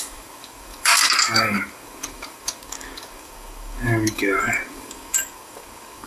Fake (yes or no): yes